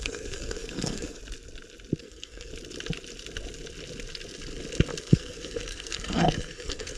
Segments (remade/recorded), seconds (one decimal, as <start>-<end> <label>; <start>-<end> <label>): 0.0-1.2 remade; 1.2-2.0 recorded; 2.0-2.5 remade; 2.5-5.0 recorded; 5.0-7.0 remade